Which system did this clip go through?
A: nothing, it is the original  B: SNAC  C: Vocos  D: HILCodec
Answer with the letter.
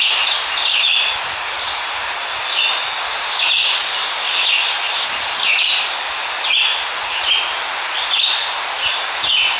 A